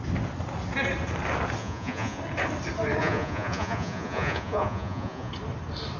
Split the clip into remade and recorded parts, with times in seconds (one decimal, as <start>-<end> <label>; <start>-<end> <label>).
0.0-1.6 recorded; 1.6-2.2 remade; 2.2-3.0 recorded; 3.0-5.3 remade; 5.3-6.0 recorded